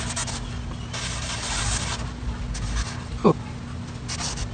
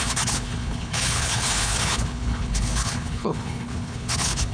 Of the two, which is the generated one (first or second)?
second